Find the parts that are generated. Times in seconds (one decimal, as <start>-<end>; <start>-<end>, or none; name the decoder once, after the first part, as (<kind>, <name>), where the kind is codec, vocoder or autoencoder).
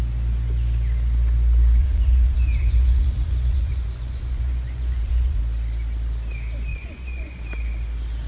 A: 1.8-5.4 (vocoder, Vocos); 6.7-7.4